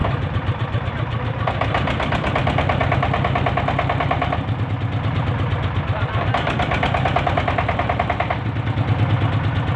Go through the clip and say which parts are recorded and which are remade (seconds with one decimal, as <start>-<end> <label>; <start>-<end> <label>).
0.0-0.9 remade; 0.9-9.8 recorded